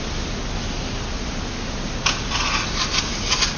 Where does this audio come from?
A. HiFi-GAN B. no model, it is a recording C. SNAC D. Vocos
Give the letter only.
B